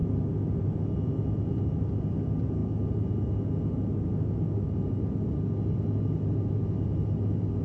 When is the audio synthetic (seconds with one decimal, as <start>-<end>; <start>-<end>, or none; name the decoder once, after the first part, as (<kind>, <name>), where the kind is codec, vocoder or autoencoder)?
none